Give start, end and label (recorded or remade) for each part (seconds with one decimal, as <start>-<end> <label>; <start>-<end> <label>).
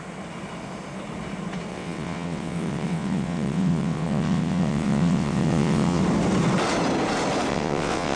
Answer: 0.0-1.7 recorded; 1.7-6.0 remade; 6.0-7.5 recorded; 7.5-8.2 remade